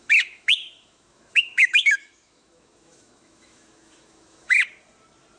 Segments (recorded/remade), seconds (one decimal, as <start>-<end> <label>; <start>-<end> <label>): 0.0-4.6 remade; 4.6-5.4 recorded